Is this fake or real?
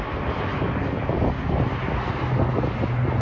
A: real